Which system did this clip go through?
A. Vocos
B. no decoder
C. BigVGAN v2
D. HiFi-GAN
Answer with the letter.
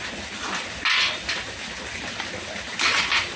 B